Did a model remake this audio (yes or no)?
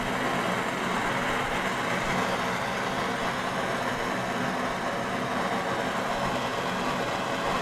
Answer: no